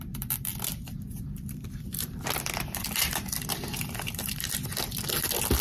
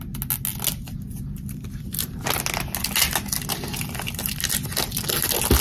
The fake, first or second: first